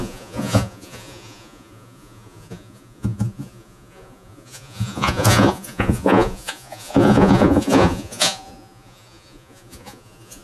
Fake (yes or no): yes